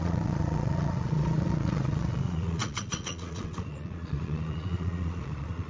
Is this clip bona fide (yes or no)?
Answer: no